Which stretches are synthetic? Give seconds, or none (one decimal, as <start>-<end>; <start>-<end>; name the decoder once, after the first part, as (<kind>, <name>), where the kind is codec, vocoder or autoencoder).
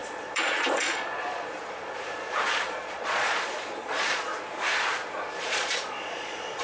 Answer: 0.0-4.3 (vocoder, Vocos); 5.4-6.6